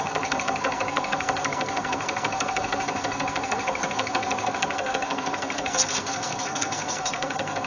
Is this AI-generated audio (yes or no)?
yes